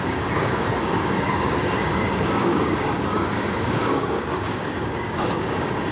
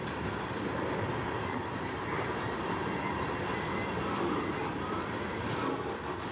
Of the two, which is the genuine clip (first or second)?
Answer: second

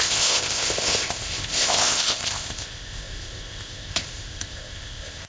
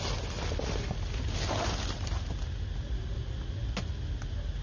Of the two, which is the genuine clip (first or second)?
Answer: second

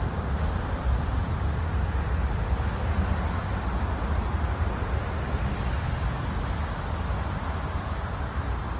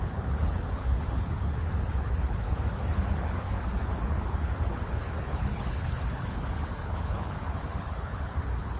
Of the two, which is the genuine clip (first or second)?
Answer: first